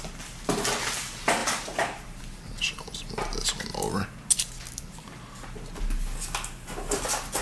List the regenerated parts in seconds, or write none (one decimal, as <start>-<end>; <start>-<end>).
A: 1.4-2.2